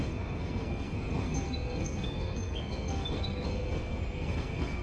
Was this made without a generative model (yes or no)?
no